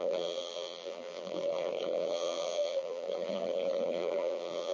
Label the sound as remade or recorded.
remade